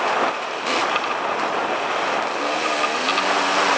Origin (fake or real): real